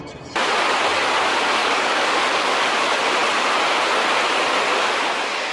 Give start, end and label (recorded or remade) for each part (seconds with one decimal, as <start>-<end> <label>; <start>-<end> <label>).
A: 0.0-1.6 recorded; 1.6-2.7 remade; 2.7-5.5 recorded